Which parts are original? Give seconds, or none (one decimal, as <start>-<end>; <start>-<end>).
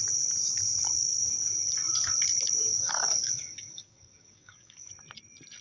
0.0-2.7; 4.9-5.6